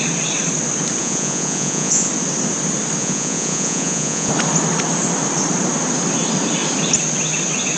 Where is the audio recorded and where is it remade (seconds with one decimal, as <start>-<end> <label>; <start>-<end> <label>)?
0.0-1.0 recorded; 1.0-2.1 remade; 2.1-3.0 recorded; 3.0-4.3 remade; 4.3-7.8 recorded